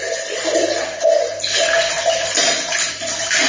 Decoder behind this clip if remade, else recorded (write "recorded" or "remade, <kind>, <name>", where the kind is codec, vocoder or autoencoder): recorded